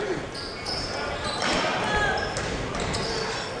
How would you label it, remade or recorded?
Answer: recorded